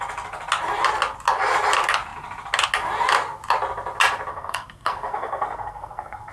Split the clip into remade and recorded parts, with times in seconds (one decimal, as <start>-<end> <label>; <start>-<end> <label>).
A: 0.0-4.3 recorded; 4.3-6.3 remade